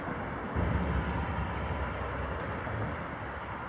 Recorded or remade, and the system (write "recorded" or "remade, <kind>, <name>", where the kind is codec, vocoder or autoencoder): recorded